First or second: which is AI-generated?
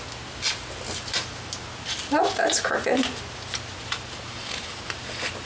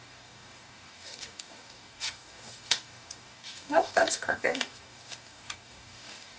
second